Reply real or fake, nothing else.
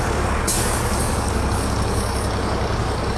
fake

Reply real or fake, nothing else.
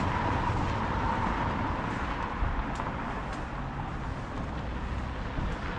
real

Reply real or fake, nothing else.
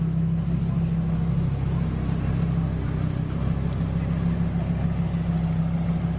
real